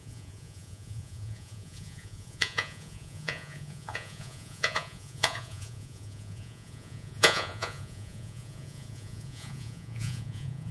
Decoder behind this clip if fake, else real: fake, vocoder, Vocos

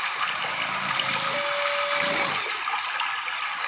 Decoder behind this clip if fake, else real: real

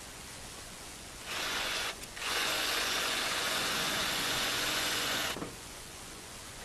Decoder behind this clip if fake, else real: fake, vocoder, Vocos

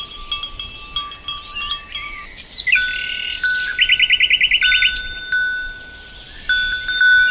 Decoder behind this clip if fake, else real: real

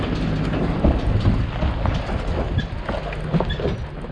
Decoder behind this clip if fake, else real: real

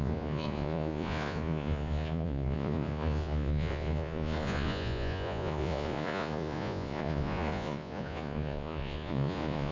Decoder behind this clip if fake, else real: fake, vocoder, Vocos